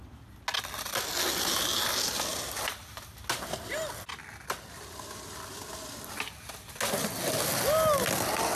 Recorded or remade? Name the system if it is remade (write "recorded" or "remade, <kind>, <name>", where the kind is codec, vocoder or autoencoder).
recorded